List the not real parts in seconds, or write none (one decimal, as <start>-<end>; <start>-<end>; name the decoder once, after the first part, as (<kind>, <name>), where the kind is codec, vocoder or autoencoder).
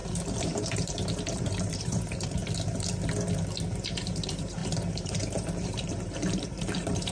0.0-2.4 (vocoder, BigVGAN v2); 3.8-7.1